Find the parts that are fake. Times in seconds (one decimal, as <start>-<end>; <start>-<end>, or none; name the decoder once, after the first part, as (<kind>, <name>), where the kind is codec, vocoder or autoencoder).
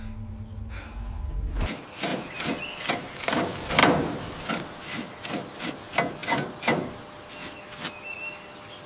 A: 2.1-2.9 (vocoder, BigVGAN v2); 3.8-4.5